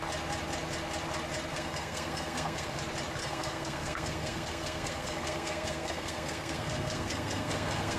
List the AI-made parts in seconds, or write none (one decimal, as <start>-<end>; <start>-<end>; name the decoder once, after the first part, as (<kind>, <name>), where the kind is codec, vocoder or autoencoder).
1.5-2.8 (codec, SNAC); 3.2-8.0